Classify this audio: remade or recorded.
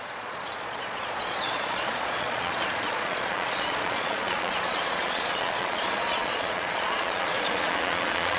remade